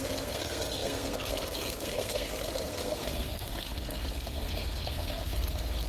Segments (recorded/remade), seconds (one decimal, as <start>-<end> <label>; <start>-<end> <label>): 0.0-5.9 remade